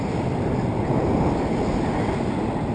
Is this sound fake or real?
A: real